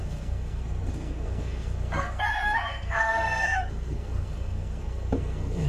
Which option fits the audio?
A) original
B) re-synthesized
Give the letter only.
B